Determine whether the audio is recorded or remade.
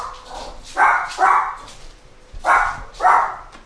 recorded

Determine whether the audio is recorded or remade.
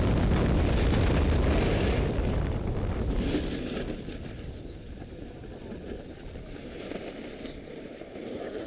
recorded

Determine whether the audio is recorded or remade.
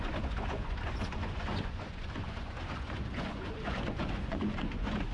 remade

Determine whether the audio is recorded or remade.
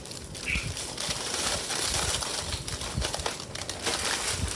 recorded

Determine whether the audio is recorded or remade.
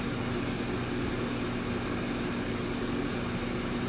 recorded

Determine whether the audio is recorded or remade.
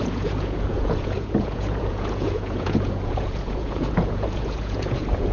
remade